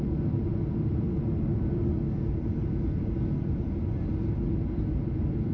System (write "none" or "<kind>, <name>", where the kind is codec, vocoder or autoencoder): none